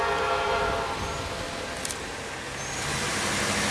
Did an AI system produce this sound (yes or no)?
no